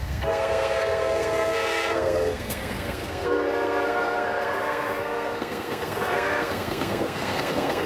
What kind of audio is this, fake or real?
fake